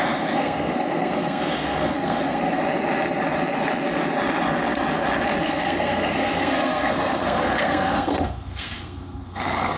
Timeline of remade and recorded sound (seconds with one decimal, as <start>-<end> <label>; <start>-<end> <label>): 0.0-2.6 remade; 2.6-5.4 recorded; 5.4-9.8 remade

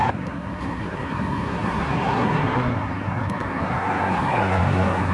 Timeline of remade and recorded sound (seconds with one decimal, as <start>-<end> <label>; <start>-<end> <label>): 0.0-5.1 remade